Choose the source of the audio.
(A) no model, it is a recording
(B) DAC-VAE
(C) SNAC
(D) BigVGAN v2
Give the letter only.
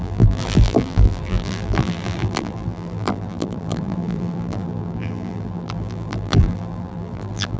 D